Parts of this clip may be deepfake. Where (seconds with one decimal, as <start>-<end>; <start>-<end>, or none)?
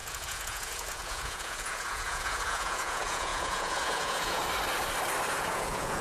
0.0-4.4; 5.3-6.0